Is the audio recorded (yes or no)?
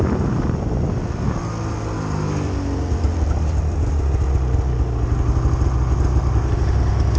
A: yes